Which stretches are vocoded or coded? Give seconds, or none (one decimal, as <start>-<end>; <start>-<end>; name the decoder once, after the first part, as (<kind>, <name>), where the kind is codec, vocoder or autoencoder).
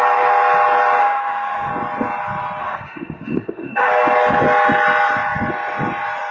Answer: 1.0-1.7 (autoencoder, DAC-VAE); 2.6-3.9